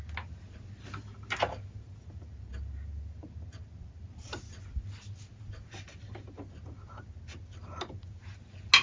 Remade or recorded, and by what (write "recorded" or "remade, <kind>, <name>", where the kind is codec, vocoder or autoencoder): recorded